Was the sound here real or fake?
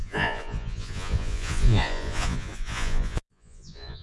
fake